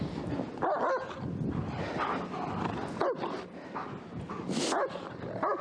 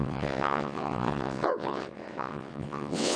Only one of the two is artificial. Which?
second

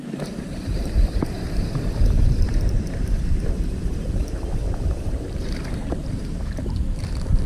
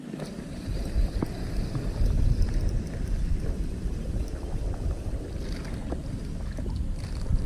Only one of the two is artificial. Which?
first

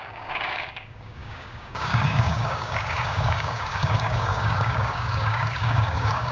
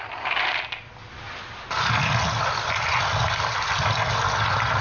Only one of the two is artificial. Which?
first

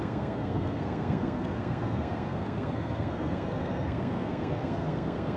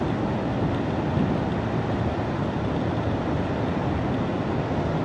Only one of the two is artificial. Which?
first